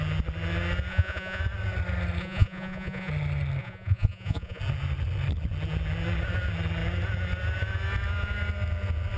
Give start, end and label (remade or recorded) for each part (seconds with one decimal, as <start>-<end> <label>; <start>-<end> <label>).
0.0-0.9 recorded; 0.9-1.4 remade; 1.4-2.2 recorded; 2.2-3.1 remade; 3.1-3.6 recorded; 3.6-4.6 remade; 4.6-9.2 recorded